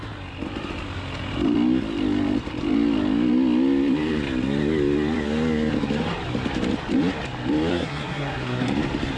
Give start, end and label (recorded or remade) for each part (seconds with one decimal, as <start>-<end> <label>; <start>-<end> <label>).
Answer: 0.0-7.7 recorded; 7.7-8.7 remade; 8.7-9.2 recorded